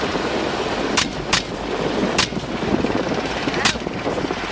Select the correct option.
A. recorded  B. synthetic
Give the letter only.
A